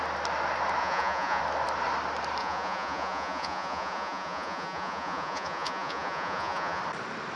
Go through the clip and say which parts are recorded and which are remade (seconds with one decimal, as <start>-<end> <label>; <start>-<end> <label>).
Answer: 0.0-0.8 recorded; 0.8-1.4 remade; 1.4-2.4 recorded; 2.4-6.8 remade; 6.8-7.4 recorded